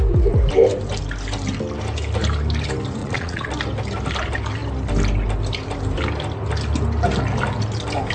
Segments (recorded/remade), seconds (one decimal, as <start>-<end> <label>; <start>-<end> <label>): 0.0-3.0 recorded; 3.0-3.5 remade; 3.5-8.1 recorded